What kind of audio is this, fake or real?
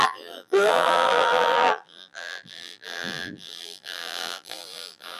fake